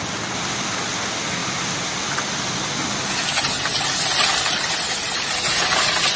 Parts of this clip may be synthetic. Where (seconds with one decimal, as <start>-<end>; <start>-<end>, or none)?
none